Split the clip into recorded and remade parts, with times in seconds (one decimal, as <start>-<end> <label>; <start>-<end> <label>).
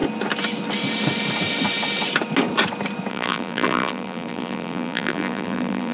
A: 0.0-3.1 recorded; 3.1-5.9 remade